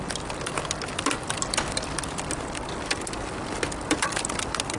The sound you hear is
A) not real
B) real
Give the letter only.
B